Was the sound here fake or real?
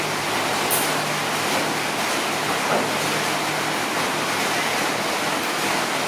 real